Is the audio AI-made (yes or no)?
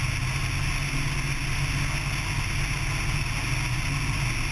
no